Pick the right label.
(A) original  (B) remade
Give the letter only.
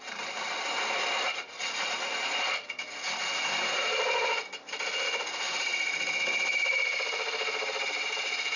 A